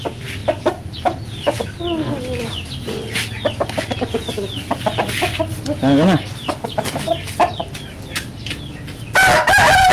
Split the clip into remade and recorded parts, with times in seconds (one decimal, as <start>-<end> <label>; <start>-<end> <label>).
0.0-9.9 recorded